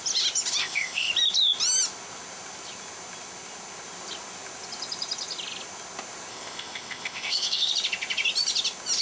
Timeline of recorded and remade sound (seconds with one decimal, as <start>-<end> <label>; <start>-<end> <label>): 0.0-0.6 recorded; 0.6-1.1 remade; 1.1-6.3 recorded; 6.3-7.7 remade; 7.7-9.0 recorded